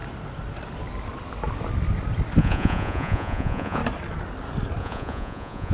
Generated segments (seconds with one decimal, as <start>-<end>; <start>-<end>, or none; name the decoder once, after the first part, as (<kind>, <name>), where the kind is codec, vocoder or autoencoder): 2.4-3.8 (vocoder, Vocos); 4.8-5.7

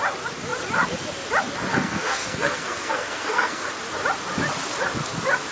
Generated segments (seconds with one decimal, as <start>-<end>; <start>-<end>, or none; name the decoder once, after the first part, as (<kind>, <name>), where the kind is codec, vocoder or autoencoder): 1.7-3.7 (codec, SNAC)

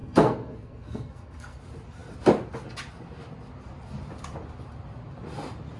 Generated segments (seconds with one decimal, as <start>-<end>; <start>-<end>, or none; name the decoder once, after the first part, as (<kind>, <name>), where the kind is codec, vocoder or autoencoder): 0.0-1.6 (codec, SNAC)

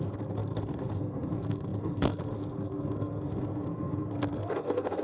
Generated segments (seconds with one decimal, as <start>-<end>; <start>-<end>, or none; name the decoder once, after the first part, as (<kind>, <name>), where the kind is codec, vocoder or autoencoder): 0.0-5.0 (codec, SNAC)